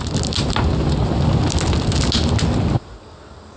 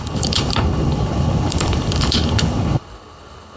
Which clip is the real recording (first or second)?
first